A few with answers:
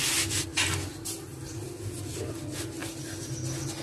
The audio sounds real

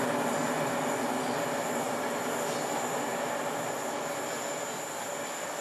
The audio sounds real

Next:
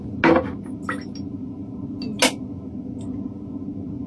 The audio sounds real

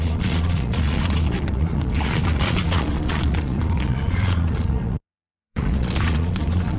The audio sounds fake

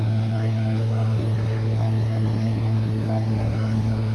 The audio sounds fake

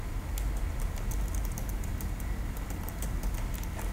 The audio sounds real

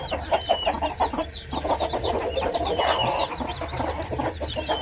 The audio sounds fake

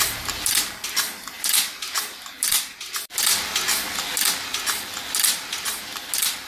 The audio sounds real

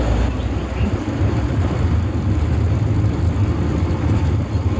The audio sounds real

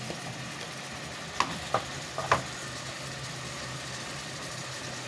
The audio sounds real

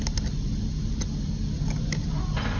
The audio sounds real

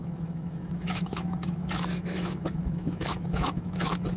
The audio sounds fake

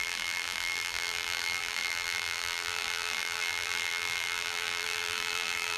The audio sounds fake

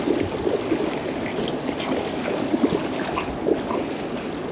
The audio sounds real